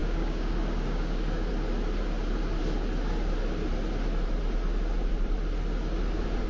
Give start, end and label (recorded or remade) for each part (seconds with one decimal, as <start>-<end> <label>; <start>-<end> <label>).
0.0-1.5 remade; 1.5-6.5 recorded